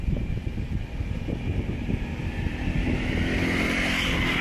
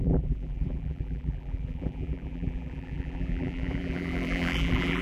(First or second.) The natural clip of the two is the first